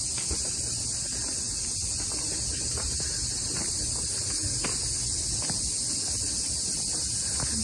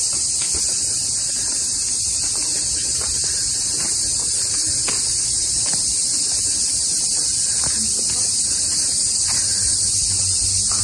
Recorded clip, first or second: first